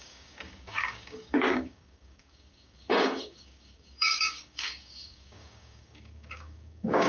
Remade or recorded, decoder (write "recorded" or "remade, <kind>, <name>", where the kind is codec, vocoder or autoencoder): remade, codec, DAC